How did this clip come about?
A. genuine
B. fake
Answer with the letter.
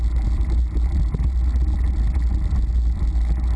A